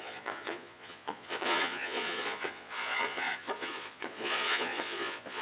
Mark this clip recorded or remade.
remade